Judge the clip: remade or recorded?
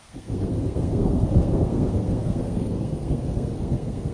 remade